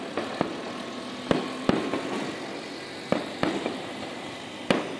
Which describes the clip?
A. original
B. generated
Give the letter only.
A